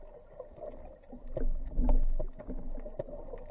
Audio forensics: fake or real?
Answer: real